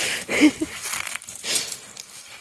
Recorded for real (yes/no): yes